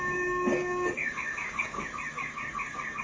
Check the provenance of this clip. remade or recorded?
remade